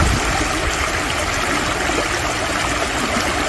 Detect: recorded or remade recorded